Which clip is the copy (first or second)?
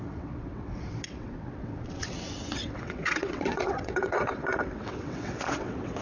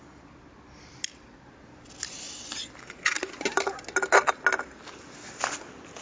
first